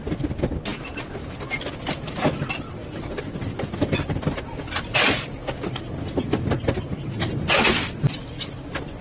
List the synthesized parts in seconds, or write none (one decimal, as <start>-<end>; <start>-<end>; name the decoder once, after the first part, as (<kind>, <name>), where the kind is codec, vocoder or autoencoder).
none